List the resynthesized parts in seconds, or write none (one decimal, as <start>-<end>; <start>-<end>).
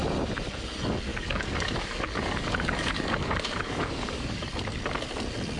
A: 1.1-4.5